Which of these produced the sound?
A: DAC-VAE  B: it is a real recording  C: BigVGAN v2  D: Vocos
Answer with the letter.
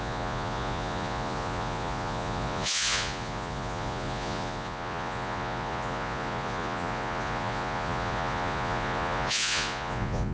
D